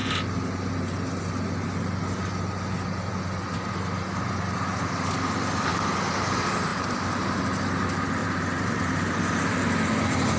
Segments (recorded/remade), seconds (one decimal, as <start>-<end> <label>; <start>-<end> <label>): 0.0-6.7 recorded; 6.7-7.4 remade; 7.4-8.2 recorded; 8.2-9.2 remade; 9.2-10.4 recorded